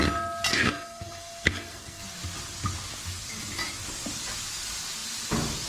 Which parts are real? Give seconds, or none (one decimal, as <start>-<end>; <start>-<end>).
0.0-0.5; 2.0-5.7